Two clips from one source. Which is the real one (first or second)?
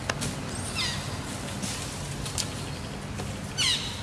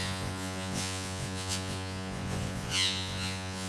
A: first